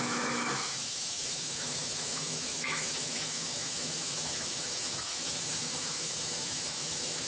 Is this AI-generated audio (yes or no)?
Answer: yes